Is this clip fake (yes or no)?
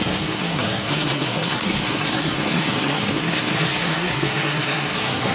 yes